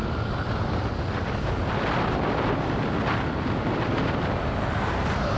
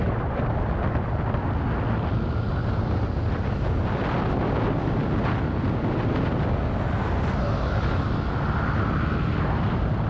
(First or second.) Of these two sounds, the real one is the second